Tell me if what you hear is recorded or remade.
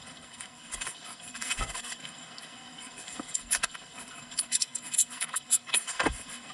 remade